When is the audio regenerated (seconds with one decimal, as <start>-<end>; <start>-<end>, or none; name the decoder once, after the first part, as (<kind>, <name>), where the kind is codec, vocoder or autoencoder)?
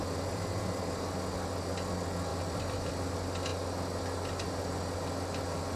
2.3-3.1 (vocoder, BigVGAN v2)